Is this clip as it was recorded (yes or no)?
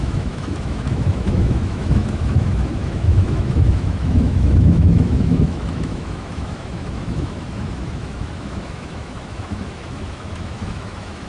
no